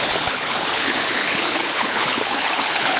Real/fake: fake